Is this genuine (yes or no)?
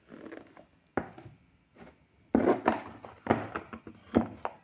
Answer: yes